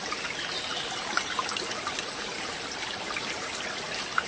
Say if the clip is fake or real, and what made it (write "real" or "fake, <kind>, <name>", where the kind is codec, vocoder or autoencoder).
real